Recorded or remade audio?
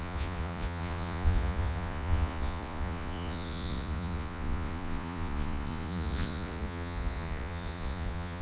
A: remade